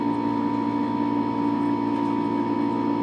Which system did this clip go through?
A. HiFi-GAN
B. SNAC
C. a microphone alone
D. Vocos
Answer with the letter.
C